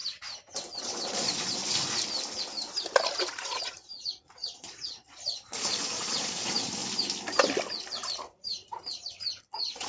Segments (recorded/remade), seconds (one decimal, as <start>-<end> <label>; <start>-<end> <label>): 0.0-0.8 recorded; 0.8-1.6 remade; 1.6-3.3 recorded; 3.3-6.8 remade; 6.8-9.4 recorded; 9.4-9.9 remade